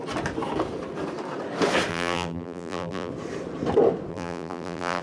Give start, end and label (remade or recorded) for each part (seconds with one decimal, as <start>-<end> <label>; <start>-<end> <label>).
0.0-1.9 recorded; 1.9-3.1 remade; 3.1-4.1 recorded; 4.1-5.0 remade